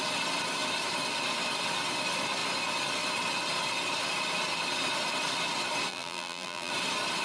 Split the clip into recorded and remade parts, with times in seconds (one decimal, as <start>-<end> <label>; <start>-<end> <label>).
0.0-5.9 recorded; 5.9-6.7 remade; 6.7-7.2 recorded